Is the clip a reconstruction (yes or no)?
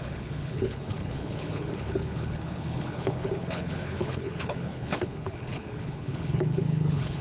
yes